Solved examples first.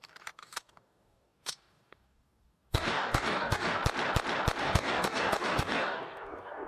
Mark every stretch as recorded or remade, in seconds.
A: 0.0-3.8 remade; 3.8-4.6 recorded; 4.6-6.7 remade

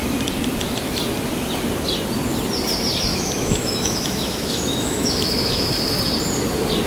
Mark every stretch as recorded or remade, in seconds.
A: 0.0-3.1 recorded; 3.1-5.9 remade; 5.9-6.9 recorded

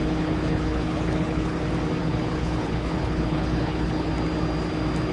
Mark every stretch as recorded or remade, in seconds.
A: 0.0-1.6 remade; 1.6-2.0 recorded; 2.0-4.1 remade; 4.1-5.1 recorded

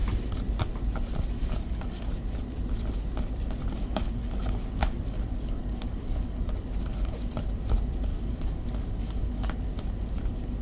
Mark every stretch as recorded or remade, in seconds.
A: 0.0-1.4 recorded; 1.4-2.1 remade; 2.1-3.8 recorded; 3.8-6.4 remade; 6.4-8.1 recorded; 8.1-9.5 remade; 9.5-10.6 recorded